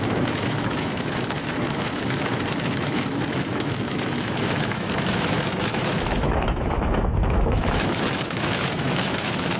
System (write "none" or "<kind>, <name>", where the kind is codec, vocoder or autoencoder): autoencoder, DAC-VAE